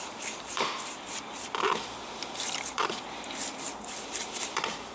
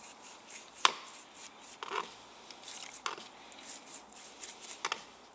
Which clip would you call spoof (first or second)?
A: first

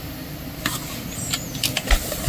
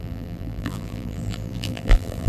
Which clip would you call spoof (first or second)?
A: second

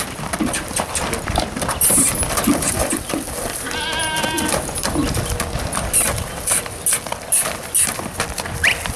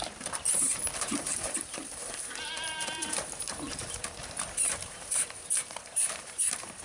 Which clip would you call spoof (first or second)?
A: second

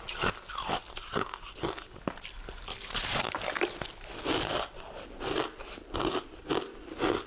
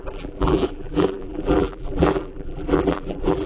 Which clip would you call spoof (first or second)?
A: second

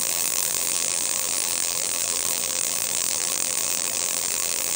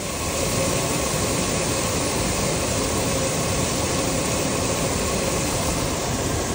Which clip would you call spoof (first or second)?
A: first